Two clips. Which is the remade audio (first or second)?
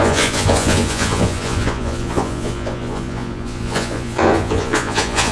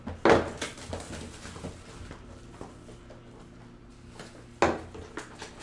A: first